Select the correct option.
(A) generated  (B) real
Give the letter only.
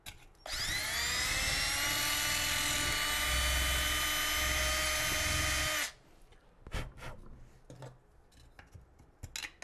B